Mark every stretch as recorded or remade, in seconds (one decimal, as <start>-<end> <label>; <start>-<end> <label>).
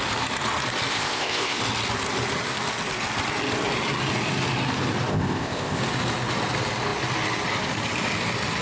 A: 0.0-0.9 recorded; 0.9-1.6 remade; 1.6-5.1 recorded; 5.1-5.8 remade; 5.8-8.6 recorded